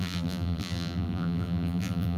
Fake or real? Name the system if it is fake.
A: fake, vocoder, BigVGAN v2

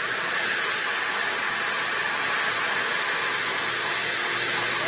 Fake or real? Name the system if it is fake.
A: real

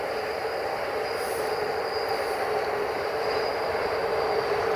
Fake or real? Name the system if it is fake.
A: real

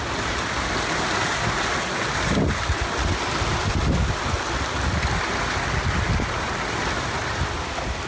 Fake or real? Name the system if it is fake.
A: real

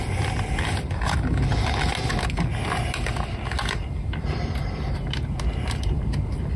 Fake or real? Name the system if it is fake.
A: real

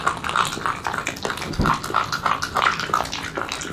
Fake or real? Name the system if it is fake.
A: real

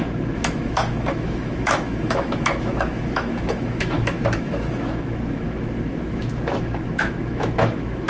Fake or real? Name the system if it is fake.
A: fake, autoencoder, DAC-VAE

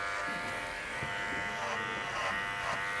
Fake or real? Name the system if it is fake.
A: real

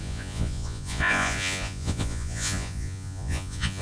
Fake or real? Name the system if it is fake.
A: fake, vocoder, Vocos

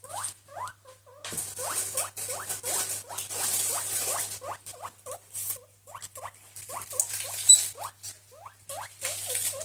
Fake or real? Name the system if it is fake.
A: real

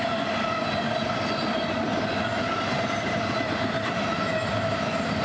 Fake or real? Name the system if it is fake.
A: fake, vocoder, BigVGAN v2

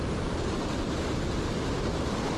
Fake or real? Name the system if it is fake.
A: real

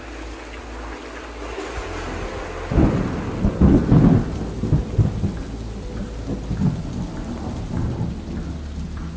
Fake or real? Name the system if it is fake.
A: real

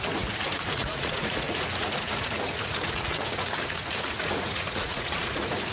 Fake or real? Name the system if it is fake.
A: fake, vocoder, Vocos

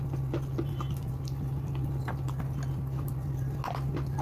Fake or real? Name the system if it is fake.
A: real